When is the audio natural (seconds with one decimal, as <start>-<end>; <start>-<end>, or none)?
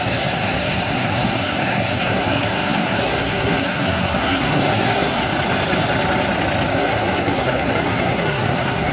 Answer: 5.2-6.7